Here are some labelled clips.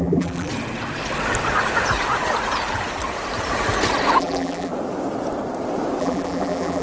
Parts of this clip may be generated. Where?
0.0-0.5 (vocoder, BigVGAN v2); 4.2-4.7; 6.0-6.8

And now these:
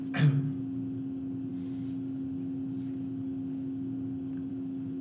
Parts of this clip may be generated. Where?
none